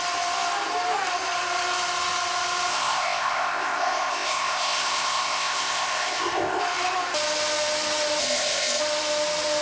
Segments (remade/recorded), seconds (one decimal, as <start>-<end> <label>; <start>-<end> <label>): 0.0-2.7 recorded; 2.7-6.6 remade; 6.6-8.2 recorded; 8.2-8.8 remade; 8.8-9.6 recorded